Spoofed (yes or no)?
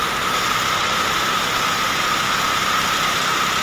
no